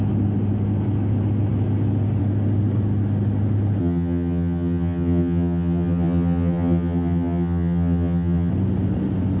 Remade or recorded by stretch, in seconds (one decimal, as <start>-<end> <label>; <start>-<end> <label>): 0.0-3.8 recorded; 3.8-8.5 remade; 8.5-9.4 recorded